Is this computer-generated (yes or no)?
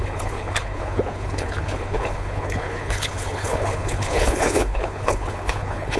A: yes